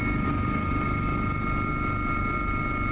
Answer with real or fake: real